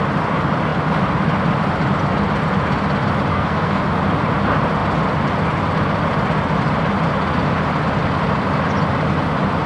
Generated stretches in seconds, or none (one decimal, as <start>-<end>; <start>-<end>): 3.3-3.8